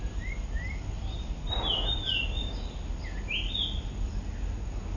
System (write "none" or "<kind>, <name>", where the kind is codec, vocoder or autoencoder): none